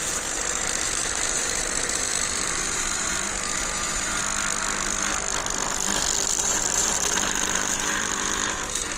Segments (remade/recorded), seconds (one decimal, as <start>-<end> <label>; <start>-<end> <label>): 0.0-4.2 remade; 4.2-6.4 recorded; 6.4-9.0 remade